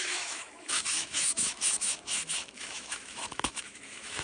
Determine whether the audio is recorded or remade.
remade